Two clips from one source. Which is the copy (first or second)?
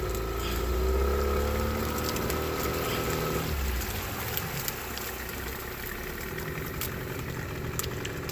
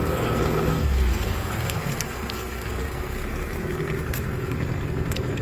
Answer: second